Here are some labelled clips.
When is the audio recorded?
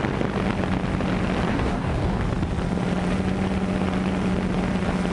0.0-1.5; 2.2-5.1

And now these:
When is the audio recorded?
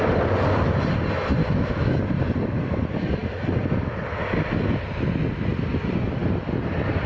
0.0-1.4; 2.0-7.1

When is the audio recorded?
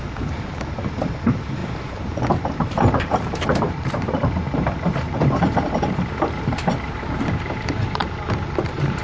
8.0-8.6